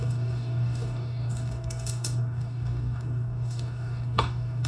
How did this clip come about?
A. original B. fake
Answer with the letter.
B